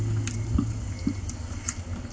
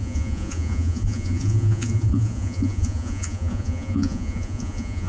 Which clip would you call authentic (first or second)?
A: first